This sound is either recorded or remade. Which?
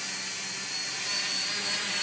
recorded